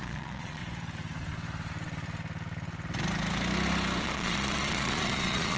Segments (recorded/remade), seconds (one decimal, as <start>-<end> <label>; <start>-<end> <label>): 0.0-0.6 remade; 0.6-4.0 recorded; 4.0-5.6 remade

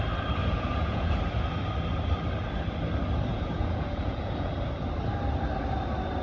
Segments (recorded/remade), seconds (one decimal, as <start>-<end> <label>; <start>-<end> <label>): 0.0-0.4 recorded; 0.4-1.2 remade; 1.2-3.3 recorded; 3.3-4.5 remade; 4.5-6.2 recorded